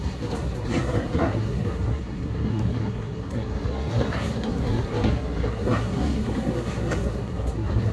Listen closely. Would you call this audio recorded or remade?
remade